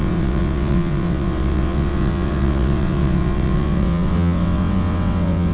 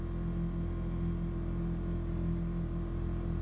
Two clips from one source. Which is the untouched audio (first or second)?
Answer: second